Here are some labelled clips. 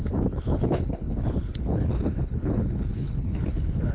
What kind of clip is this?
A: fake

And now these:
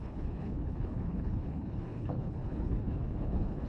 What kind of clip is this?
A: fake